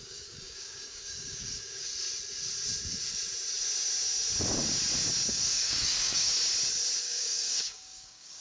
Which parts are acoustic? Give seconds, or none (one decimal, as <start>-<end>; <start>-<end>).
1.9-5.3; 6.3-7.0